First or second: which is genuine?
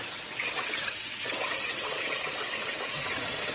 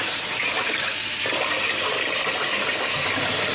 second